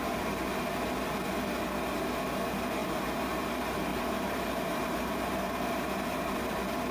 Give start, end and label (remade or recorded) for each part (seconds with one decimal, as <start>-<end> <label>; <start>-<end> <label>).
0.0-2.8 recorded; 2.8-3.4 remade; 3.4-3.9 recorded; 3.9-6.2 remade; 6.2-6.9 recorded